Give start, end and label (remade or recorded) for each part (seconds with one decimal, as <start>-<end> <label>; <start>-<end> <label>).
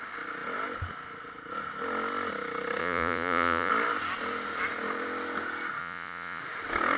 0.0-2.8 recorded; 2.8-3.7 remade; 3.7-5.8 recorded; 5.8-6.4 remade; 6.4-7.0 recorded